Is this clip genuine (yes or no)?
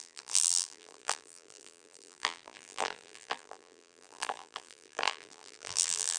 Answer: no